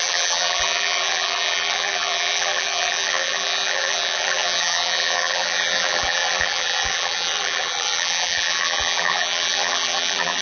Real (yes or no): no